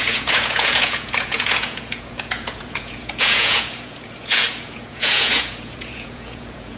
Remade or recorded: remade